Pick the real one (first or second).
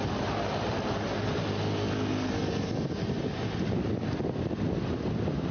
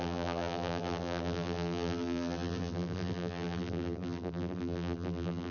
first